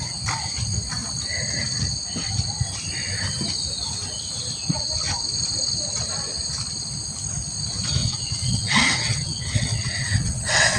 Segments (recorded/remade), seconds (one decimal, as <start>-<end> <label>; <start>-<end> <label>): 0.0-8.0 recorded; 8.0-10.8 remade